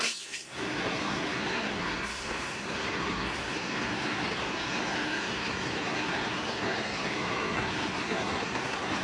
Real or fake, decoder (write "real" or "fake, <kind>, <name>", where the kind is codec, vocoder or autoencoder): fake, codec, SNAC